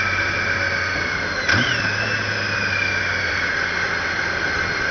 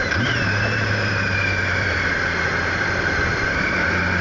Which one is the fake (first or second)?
second